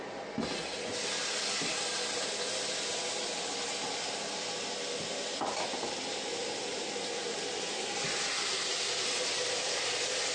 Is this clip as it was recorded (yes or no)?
yes